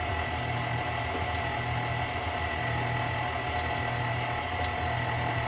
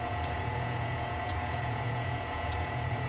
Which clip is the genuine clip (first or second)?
first